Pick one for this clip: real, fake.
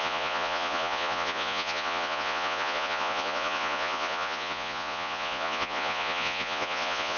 fake